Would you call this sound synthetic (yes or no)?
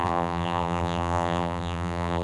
yes